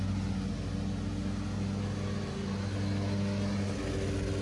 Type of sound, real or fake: real